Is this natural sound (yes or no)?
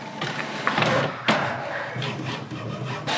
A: yes